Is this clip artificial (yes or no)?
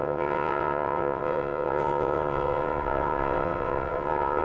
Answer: yes